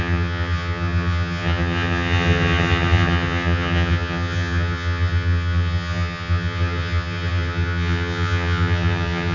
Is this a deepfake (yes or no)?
yes